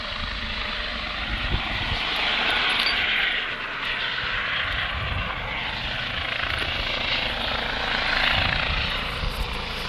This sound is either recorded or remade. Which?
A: recorded